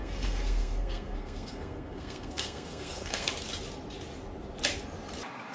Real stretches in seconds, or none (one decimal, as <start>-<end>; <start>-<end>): 3.3-5.5